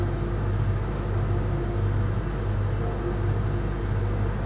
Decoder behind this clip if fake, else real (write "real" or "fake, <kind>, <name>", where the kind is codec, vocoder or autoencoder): real